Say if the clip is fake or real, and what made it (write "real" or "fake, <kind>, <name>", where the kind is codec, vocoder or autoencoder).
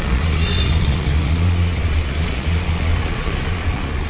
fake, vocoder, Vocos